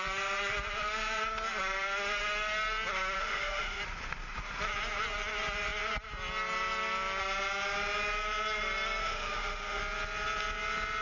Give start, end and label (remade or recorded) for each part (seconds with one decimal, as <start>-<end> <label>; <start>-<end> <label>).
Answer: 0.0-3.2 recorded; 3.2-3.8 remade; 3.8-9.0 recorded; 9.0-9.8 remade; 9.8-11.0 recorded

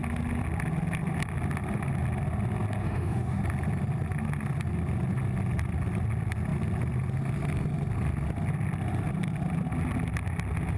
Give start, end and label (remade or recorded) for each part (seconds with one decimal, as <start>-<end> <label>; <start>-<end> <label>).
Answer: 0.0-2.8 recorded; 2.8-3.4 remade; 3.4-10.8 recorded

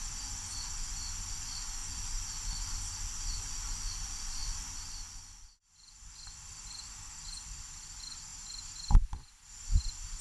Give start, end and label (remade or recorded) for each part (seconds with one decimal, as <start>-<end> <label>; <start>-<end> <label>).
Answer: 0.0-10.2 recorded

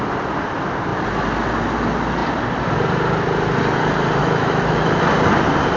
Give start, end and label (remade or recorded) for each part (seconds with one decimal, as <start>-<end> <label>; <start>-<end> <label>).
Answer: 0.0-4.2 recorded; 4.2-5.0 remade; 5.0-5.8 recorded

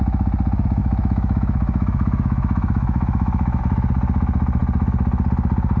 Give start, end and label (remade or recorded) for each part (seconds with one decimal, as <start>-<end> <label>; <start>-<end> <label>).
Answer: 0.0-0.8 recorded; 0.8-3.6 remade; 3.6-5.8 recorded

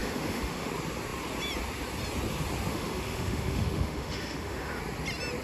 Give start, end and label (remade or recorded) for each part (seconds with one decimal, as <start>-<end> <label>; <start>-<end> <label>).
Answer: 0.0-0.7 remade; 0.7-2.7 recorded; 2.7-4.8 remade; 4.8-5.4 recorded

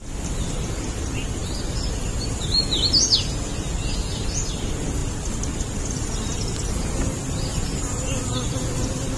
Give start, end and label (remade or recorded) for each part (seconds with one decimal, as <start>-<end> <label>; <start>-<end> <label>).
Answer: 0.0-9.2 recorded

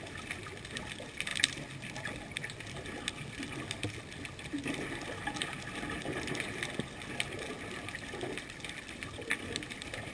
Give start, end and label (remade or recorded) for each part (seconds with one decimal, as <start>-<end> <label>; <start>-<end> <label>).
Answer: 0.0-10.1 recorded